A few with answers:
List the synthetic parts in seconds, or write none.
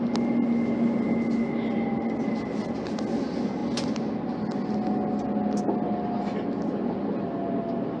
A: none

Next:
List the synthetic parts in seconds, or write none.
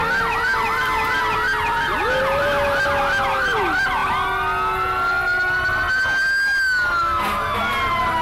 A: 0.0-2.4 (vocoder, BigVGAN v2)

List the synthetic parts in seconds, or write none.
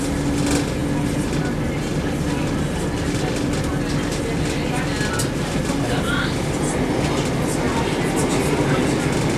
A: none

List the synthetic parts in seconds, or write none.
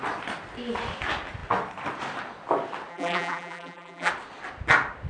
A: 2.9-4.1 (vocoder, BigVGAN v2)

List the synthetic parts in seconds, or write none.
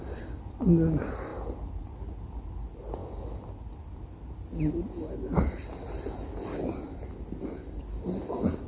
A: none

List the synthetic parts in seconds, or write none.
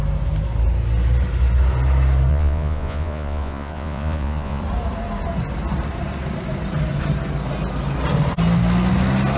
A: 2.3-4.6 (vocoder, Vocos)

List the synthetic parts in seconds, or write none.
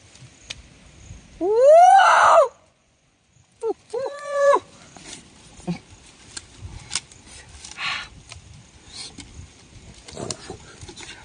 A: 1.8-5.0 (vocoder, Vocos)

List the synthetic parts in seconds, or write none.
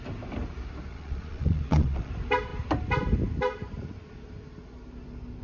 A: 0.9-2.1 (vocoder, Vocos)